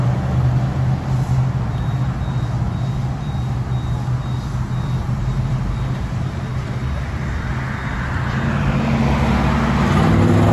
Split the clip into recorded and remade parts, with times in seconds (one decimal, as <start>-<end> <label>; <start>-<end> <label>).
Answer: 0.0-5.0 recorded; 5.0-5.7 remade; 5.7-6.5 recorded; 6.5-7.5 remade; 7.5-10.5 recorded